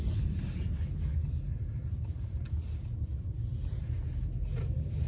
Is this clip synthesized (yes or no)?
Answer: no